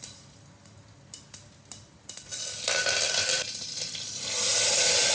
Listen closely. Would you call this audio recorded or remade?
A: recorded